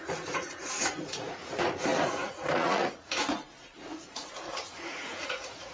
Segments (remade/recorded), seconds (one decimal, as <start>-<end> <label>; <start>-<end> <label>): 0.0-5.7 remade